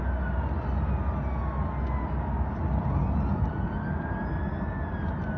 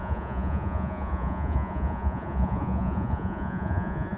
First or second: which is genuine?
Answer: first